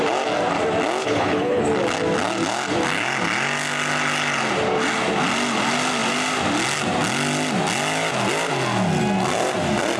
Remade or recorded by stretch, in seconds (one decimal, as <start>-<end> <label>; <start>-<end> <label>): 0.0-1.0 recorded; 1.0-1.6 remade; 1.6-10.0 recorded

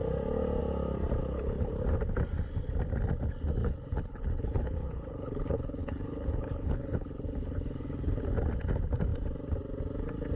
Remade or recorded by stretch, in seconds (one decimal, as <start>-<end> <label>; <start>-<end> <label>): 0.0-1.2 recorded; 1.2-1.7 remade; 1.7-3.6 recorded; 3.6-8.2 remade; 8.2-10.4 recorded

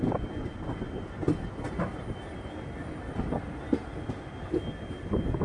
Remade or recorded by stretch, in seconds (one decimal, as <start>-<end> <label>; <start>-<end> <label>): 0.0-5.4 recorded

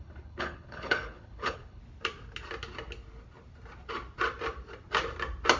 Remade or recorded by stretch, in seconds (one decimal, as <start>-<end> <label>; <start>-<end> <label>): 0.0-1.8 remade; 1.8-5.6 recorded

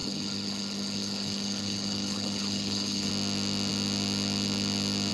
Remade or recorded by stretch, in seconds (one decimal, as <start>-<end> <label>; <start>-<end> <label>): 0.0-3.1 remade; 3.1-5.1 recorded

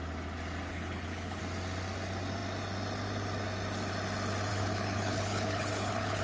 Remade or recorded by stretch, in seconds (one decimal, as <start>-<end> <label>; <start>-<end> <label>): 0.0-0.7 recorded; 0.7-1.4 remade; 1.4-4.5 recorded; 4.5-6.2 remade